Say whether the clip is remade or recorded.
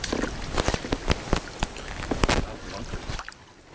remade